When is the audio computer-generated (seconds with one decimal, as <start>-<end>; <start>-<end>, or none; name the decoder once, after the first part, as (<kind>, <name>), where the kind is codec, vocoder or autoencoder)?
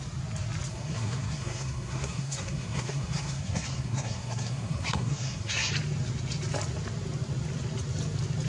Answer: 0.7-5.7 (codec, SNAC)